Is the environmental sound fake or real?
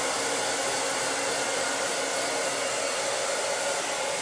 real